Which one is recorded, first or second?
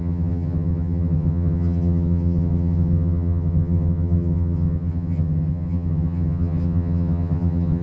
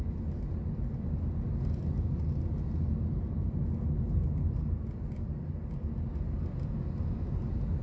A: second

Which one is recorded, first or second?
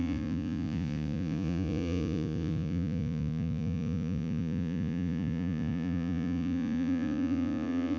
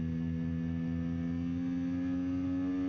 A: second